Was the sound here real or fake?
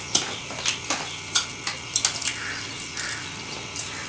real